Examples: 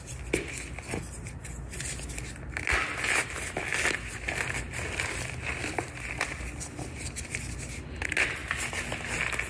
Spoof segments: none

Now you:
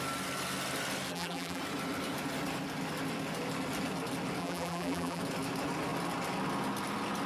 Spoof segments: 1.1-1.6 (vocoder, BigVGAN v2); 4.4-5.2